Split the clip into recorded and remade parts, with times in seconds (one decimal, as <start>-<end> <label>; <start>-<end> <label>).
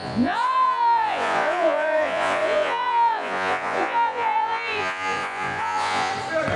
0.0-6.1 remade; 6.1-6.6 recorded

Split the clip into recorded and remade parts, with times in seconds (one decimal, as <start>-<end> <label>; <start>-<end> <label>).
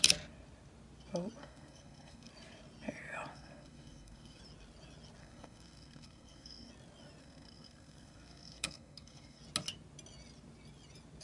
0.0-1.4 recorded; 1.4-2.3 remade; 2.3-3.3 recorded; 3.3-4.4 remade; 4.4-5.2 recorded; 5.2-6.7 remade; 6.7-7.2 recorded; 7.2-9.4 remade; 9.4-11.2 recorded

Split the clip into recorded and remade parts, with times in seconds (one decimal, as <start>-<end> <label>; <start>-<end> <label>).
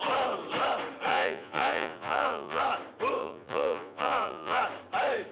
0.0-1.1 recorded; 1.1-2.6 remade; 2.6-3.2 recorded; 3.2-4.6 remade; 4.6-5.3 recorded